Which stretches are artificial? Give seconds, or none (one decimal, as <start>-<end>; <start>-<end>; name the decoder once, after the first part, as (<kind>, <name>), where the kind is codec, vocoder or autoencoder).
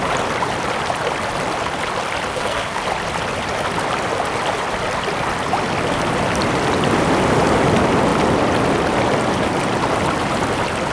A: 2.3-2.8 (codec, SNAC)